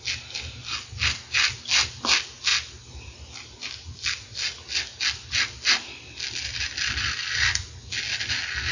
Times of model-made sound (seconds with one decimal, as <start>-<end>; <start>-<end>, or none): none